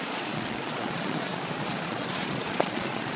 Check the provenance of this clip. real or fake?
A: fake